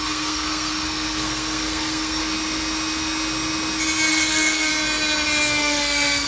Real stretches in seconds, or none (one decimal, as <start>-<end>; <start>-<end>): 2.2-4.1; 4.7-5.6